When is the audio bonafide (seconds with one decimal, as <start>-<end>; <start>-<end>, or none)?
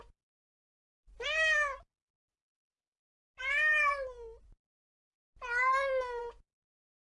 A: 0.0-7.1